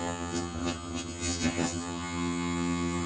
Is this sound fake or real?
fake